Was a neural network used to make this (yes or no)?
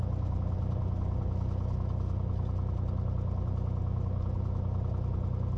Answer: no